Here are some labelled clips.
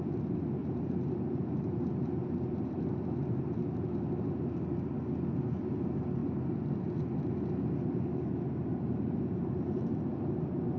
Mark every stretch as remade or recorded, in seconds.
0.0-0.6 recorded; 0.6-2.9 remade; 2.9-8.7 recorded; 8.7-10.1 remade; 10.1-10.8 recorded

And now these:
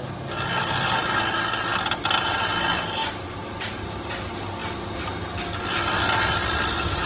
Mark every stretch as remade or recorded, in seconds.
0.0-3.0 recorded; 3.0-3.8 remade; 3.8-7.1 recorded

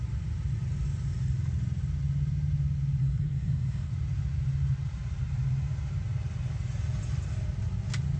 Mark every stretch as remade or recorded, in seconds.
0.0-3.0 recorded; 3.0-3.9 remade; 3.9-8.2 recorded

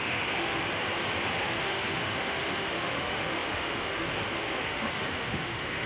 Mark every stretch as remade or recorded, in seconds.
0.0-0.6 remade; 0.6-1.4 recorded; 1.4-5.9 remade

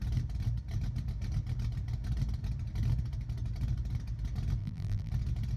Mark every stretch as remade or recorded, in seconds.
0.0-4.6 recorded; 4.6-5.1 remade; 5.1-5.6 recorded